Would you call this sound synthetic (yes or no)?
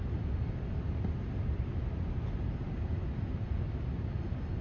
no